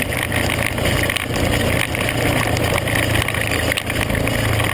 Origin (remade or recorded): recorded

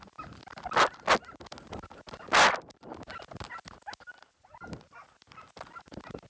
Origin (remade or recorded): recorded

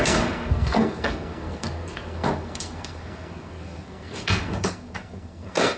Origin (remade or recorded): remade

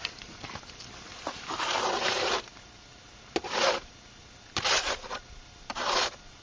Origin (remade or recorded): remade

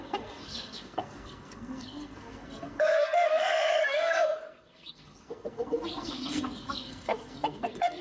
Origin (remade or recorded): remade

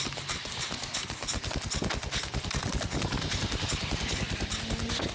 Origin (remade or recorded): recorded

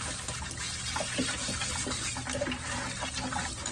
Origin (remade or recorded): recorded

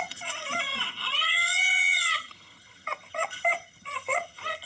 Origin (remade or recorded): remade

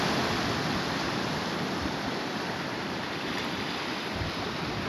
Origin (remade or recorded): remade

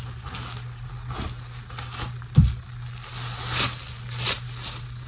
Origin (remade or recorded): recorded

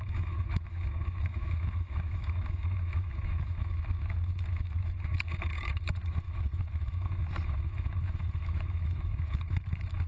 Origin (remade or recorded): remade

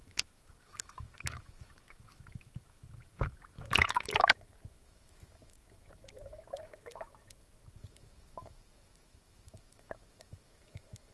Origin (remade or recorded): remade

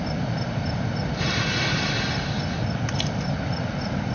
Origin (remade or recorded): recorded